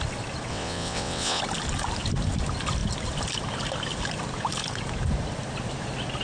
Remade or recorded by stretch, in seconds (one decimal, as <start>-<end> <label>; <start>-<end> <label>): 0.0-0.5 recorded; 0.5-1.4 remade; 1.4-6.2 recorded